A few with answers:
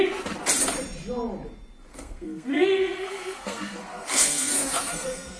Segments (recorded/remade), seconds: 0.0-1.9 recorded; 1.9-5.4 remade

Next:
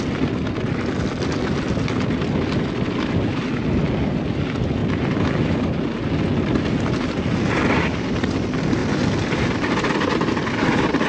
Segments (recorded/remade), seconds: 0.0-11.1 recorded

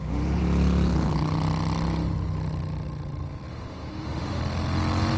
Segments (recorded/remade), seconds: 0.0-0.4 remade; 0.4-3.5 recorded; 3.5-4.4 remade; 4.4-5.2 recorded

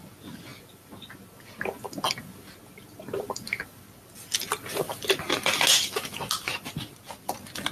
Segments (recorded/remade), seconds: 0.0-7.7 recorded

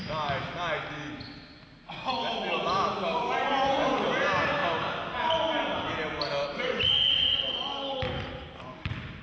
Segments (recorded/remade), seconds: 0.0-9.2 recorded

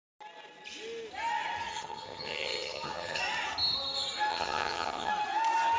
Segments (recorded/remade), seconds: 0.0-1.7 recorded; 1.7-3.2 remade; 3.2-4.3 recorded; 4.3-5.1 remade; 5.1-5.8 recorded

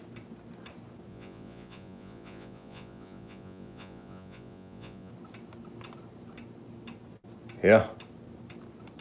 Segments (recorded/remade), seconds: 0.0-1.1 recorded; 1.1-5.1 remade; 5.1-9.0 recorded